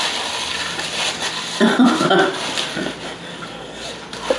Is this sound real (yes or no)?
yes